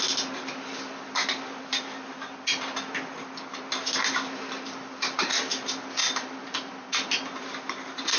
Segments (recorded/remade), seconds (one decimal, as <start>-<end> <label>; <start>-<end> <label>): 0.0-6.0 recorded; 6.0-6.7 remade; 6.7-8.2 recorded